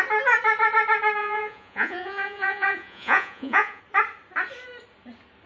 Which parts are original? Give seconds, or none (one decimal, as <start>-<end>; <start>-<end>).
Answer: 0.0-1.2; 3.8-5.5